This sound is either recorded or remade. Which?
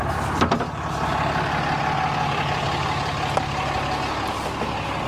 recorded